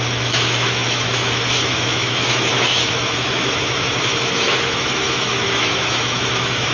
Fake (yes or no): yes